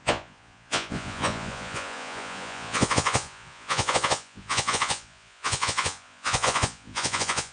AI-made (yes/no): yes